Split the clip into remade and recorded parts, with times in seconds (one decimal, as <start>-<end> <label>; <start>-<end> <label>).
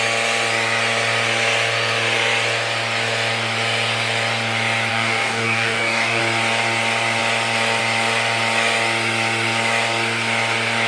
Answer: 0.0-4.9 recorded; 4.9-6.2 remade; 6.2-10.9 recorded